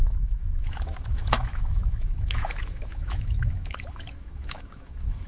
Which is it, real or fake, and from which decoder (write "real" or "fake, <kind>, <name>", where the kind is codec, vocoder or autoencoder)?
fake, autoencoder, DAC-VAE